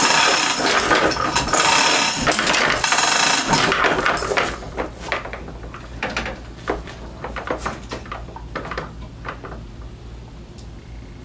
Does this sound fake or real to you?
real